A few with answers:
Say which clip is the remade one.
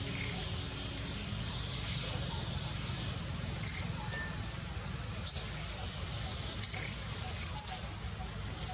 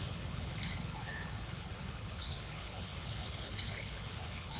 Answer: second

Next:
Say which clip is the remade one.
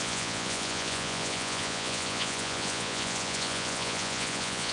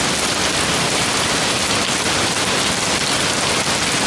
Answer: first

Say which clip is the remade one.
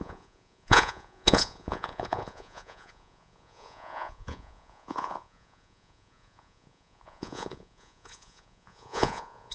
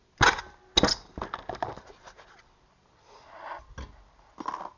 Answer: first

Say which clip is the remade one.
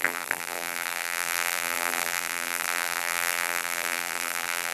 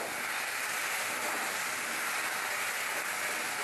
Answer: first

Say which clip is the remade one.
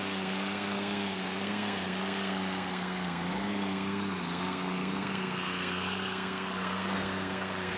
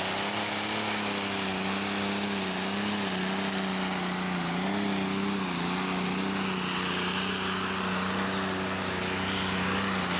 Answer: first